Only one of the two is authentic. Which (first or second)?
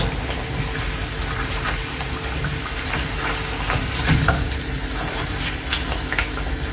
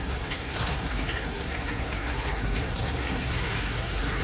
first